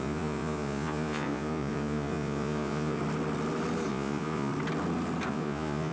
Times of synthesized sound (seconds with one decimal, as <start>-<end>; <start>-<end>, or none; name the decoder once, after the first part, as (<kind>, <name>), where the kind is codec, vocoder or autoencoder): 0.0-3.0 (vocoder, Vocos); 3.9-4.5; 5.3-5.9